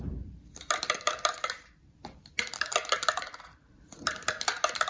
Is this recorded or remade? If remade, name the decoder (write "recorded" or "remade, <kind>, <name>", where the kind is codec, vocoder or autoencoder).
remade, vocoder, BigVGAN v2